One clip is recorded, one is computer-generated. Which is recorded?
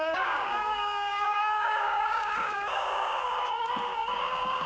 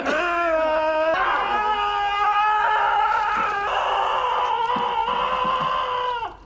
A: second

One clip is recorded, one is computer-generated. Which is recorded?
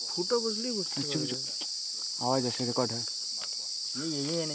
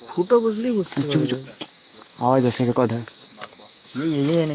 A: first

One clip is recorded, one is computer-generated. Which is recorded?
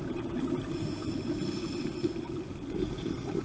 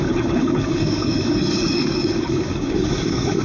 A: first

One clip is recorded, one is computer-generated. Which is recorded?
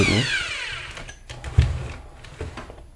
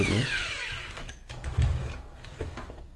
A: first